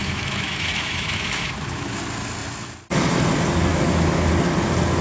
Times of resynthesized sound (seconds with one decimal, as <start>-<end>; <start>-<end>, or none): 0.0-2.0; 3.7-4.3